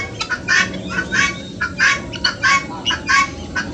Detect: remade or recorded recorded